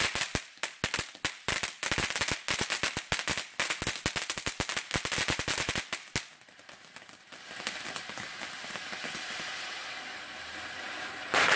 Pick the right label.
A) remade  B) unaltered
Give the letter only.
B